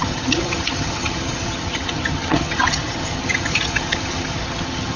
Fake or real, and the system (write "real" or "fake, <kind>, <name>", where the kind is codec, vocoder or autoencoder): fake, vocoder, HiFi-GAN